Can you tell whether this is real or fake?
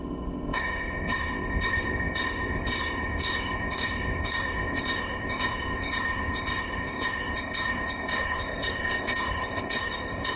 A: fake